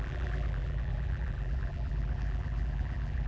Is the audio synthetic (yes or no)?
yes